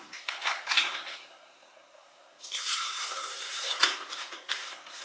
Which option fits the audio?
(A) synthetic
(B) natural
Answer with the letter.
A